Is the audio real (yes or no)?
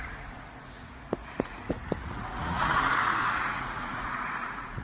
no